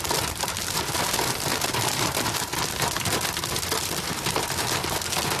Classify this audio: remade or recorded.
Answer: recorded